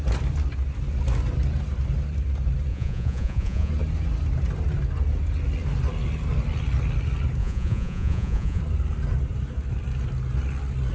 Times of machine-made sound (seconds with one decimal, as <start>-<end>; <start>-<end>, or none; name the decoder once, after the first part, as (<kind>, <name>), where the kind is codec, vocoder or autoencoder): 2.7-3.7 (vocoder, Vocos); 7.4-8.6